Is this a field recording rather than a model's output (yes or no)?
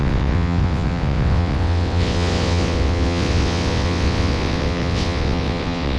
no